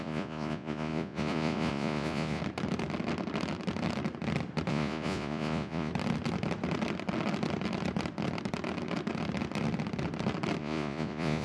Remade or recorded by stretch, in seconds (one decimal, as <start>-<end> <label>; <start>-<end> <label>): 0.0-2.4 remade; 2.4-4.7 recorded; 4.7-5.9 remade; 5.9-10.6 recorded; 10.6-11.4 remade

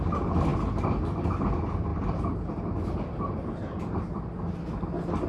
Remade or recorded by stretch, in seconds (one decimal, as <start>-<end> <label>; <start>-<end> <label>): 0.0-5.3 recorded

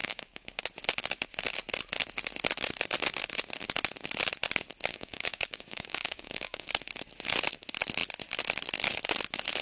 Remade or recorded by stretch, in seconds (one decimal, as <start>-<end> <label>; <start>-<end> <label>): 0.0-0.6 remade; 0.6-4.9 recorded; 4.9-6.7 remade; 6.7-9.6 recorded

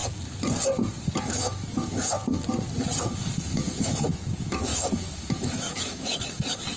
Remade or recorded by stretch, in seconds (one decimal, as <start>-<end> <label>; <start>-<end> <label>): 0.0-1.2 recorded; 1.2-2.2 remade; 2.2-3.0 recorded; 3.0-6.8 remade

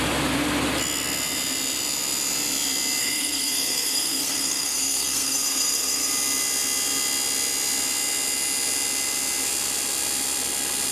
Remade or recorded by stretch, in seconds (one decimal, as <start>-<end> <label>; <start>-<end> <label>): 0.0-3.0 recorded; 3.0-6.1 remade; 6.1-10.9 recorded

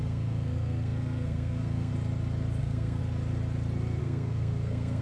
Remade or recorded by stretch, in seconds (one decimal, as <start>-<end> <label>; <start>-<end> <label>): 0.0-1.9 remade; 1.9-2.6 recorded; 2.6-3.0 remade; 3.0-4.0 recorded; 4.0-5.0 remade

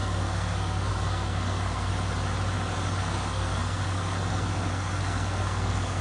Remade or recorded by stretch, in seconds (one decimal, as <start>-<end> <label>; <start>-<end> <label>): 0.0-1.9 remade; 1.9-3.0 recorded; 3.0-6.0 remade